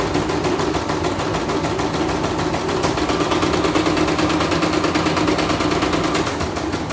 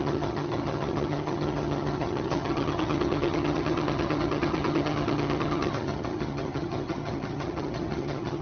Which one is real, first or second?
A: first